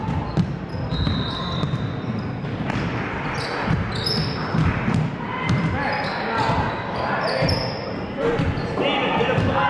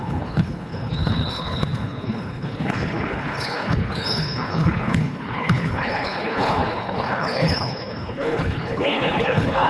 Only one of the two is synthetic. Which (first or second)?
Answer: second